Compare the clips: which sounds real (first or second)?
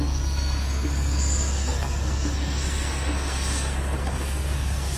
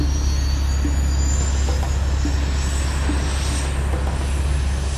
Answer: second